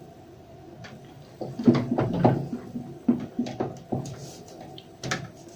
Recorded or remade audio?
recorded